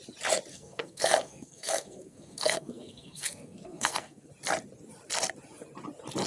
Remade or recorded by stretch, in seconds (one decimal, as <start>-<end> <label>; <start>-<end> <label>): 0.0-0.5 recorded; 0.5-4.3 remade; 4.3-6.3 recorded